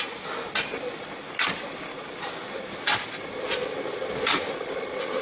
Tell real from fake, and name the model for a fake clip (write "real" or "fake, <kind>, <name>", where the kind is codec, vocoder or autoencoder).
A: real